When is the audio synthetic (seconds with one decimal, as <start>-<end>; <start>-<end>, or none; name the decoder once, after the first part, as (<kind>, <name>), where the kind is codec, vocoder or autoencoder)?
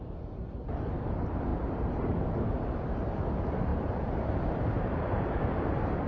1.5-2.3 (vocoder, BigVGAN v2); 3.7-5.4